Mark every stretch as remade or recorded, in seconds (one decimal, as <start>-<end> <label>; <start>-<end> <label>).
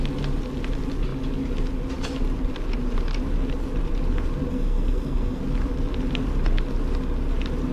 0.0-4.5 recorded; 4.5-5.4 remade; 5.4-7.7 recorded